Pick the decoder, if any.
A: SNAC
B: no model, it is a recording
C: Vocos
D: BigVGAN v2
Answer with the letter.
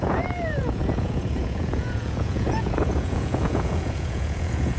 C